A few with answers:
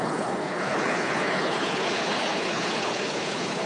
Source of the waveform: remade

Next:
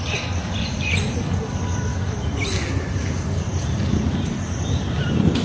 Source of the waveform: recorded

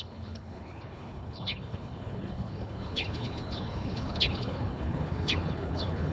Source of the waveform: remade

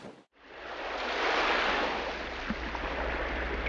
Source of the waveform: recorded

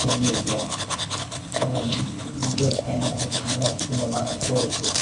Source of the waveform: remade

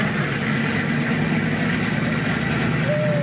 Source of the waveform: recorded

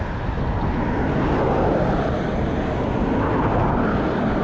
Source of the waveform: recorded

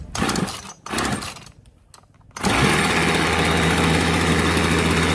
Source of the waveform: recorded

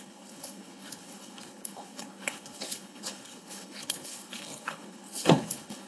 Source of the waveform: remade